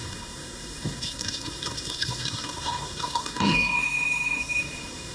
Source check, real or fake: fake